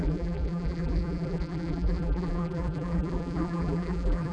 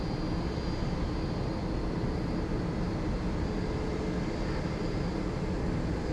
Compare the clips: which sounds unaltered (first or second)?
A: second